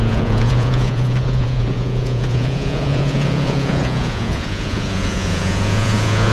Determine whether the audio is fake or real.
fake